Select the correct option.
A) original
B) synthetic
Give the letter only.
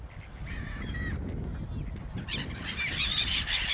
A